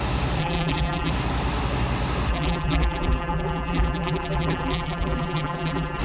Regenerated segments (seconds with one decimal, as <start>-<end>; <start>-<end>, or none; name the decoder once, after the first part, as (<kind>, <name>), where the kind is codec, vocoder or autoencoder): 0.4-1.1 (vocoder, BigVGAN v2); 2.3-6.0